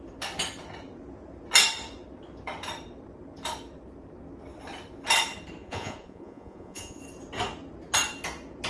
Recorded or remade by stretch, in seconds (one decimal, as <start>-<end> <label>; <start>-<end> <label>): 0.0-5.6 recorded; 5.6-7.0 remade; 7.0-8.7 recorded